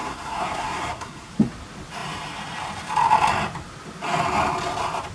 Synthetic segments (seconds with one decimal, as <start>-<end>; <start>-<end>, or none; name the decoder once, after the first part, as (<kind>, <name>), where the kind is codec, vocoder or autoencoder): 0.0-1.3 (codec, SNAC)